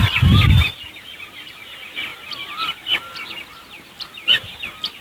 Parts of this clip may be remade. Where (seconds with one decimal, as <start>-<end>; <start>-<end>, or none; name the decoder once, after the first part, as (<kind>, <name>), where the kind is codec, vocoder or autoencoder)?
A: none